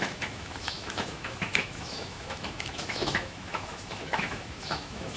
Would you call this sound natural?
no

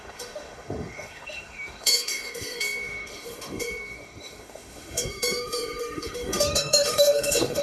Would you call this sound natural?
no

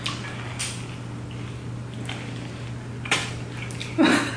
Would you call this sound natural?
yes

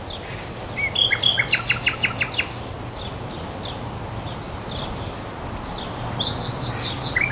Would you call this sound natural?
yes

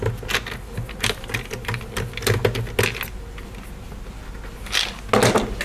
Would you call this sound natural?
yes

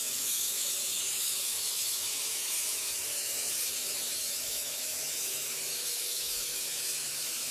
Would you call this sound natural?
no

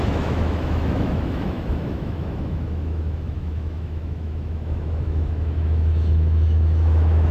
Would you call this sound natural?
no